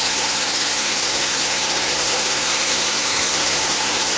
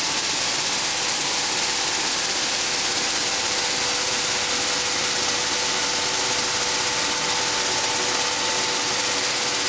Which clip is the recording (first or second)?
second